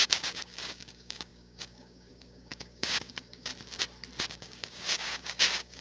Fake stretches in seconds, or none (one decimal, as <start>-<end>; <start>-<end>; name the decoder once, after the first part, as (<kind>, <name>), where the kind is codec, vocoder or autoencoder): 0.0-3.5 (codec, DAC); 4.2-5.8